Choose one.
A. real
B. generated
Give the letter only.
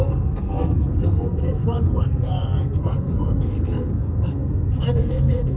B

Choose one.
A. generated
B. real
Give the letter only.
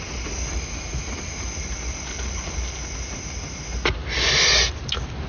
B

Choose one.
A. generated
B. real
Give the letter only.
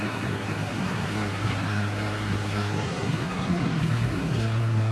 A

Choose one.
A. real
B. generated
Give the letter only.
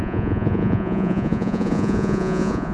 B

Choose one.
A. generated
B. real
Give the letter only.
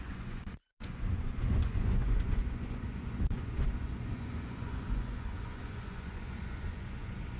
A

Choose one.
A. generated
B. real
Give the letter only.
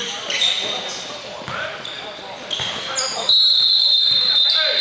B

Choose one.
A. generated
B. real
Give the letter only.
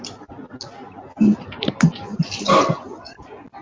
B